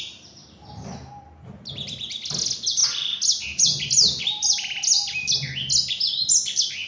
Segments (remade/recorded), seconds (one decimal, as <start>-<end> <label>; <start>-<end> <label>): 0.0-6.9 recorded